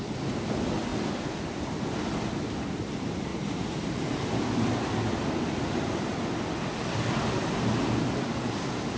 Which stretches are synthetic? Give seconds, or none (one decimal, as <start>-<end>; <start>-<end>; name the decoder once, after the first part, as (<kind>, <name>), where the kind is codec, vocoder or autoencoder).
0.9-1.6 (vocoder, BigVGAN v2); 3.3-8.3